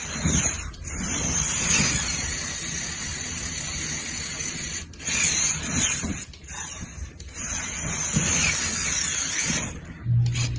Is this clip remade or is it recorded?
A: recorded